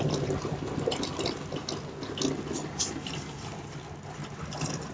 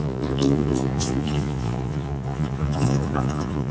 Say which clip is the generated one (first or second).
second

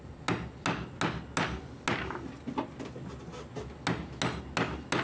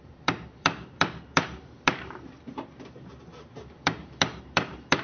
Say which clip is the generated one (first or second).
second